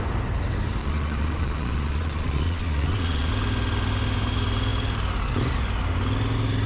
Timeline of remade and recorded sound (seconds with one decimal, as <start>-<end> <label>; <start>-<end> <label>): 0.0-0.8 recorded; 0.8-3.3 remade; 3.3-6.7 recorded